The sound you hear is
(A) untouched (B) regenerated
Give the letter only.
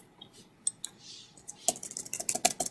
A